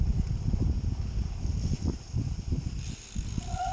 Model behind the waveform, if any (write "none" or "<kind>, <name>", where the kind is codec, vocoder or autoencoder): none